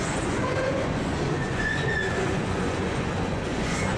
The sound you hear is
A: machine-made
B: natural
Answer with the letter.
A